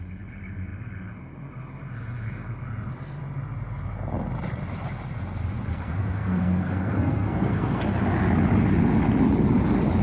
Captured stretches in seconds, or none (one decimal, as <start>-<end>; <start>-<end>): 0.0-5.7; 7.8-10.0